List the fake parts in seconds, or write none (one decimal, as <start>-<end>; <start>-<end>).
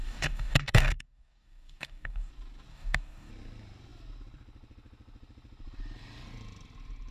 0.0-2.3; 2.7-3.3